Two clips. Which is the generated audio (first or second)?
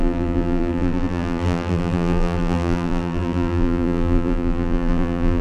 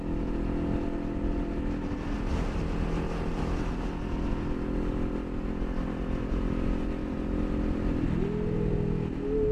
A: first